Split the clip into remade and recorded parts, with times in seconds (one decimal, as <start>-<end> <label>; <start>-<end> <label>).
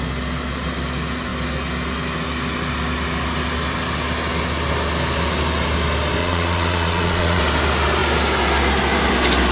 0.0-6.2 recorded; 6.2-7.4 remade; 7.4-9.5 recorded